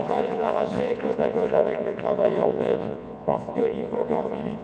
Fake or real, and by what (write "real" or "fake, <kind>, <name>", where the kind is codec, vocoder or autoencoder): fake, vocoder, Vocos